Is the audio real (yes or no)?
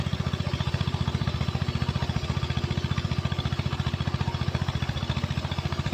yes